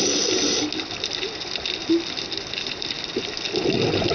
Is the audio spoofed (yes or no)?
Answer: no